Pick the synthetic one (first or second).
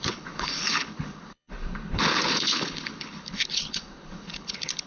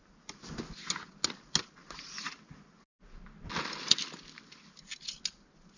first